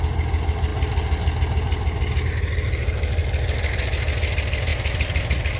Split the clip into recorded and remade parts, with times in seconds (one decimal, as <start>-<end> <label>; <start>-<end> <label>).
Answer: 0.0-5.6 recorded